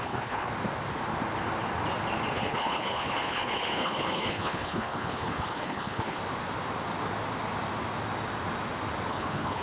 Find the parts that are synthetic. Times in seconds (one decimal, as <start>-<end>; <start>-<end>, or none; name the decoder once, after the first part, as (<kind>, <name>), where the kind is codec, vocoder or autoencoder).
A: 0.0-0.5 (codec, HILCodec); 2.3-6.2; 9.1-9.6